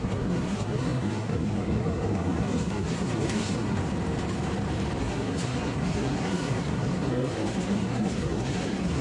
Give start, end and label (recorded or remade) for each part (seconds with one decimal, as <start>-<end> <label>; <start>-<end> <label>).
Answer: 0.0-3.8 remade; 3.8-5.0 recorded; 5.0-9.0 remade